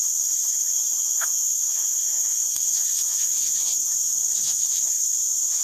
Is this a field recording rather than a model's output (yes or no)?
no